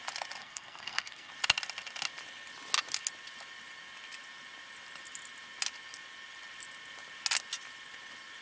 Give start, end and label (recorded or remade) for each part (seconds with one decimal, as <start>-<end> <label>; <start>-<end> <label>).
0.0-0.4 recorded; 0.4-1.3 remade; 1.3-8.4 recorded